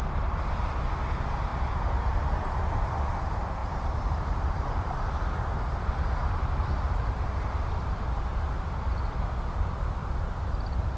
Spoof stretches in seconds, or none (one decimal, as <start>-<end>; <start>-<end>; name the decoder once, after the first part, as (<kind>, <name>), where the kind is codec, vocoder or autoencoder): 3.6-8.6 (vocoder, BigVGAN v2); 10.0-11.0